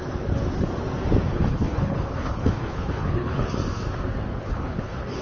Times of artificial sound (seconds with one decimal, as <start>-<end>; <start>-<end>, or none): 1.3-3.5; 4.4-5.2